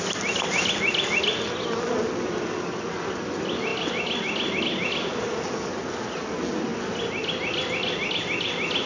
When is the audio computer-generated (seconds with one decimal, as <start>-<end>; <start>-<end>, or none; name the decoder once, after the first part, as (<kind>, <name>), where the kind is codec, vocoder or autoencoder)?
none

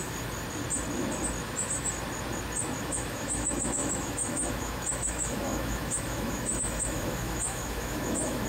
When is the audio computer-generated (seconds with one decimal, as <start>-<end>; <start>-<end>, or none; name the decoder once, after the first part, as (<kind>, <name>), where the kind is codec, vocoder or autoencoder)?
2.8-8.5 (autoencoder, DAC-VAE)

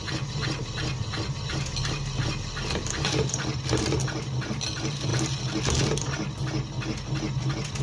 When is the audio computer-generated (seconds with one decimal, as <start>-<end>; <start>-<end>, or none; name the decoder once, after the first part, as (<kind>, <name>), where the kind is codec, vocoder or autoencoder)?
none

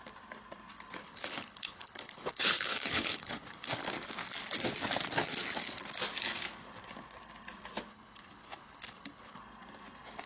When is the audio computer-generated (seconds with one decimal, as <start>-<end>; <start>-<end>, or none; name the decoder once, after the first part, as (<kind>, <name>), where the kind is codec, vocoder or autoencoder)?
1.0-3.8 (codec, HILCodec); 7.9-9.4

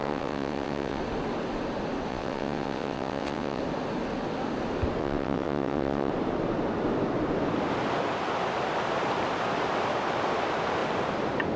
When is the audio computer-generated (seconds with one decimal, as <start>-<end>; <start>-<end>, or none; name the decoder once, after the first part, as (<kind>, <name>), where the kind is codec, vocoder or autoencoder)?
0.0-1.0 (vocoder, WaveNeXt); 2.1-3.6; 5.0-6.1